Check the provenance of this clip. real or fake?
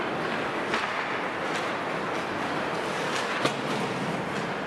real